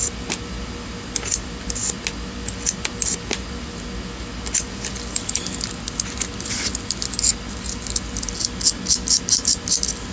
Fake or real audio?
real